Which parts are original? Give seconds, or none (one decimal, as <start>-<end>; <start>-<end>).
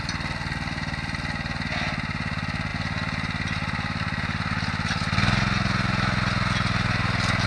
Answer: 0.0-7.5